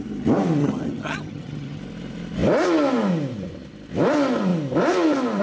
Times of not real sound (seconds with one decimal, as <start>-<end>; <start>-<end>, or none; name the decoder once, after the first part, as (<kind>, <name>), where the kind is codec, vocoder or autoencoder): 0.6-1.8 (vocoder, HiFi-GAN)